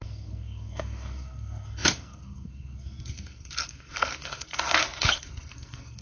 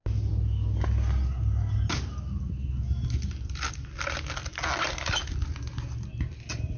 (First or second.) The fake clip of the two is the first